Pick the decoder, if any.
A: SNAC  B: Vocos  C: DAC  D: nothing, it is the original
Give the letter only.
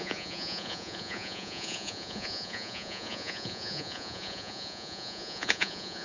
B